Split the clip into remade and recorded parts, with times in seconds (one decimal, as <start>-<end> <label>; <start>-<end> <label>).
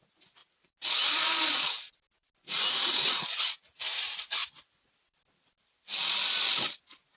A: 0.0-7.2 recorded